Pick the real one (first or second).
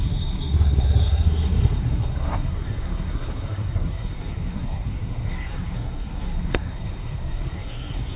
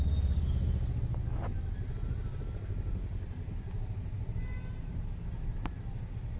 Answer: second